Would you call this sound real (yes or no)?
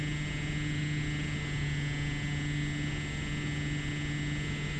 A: yes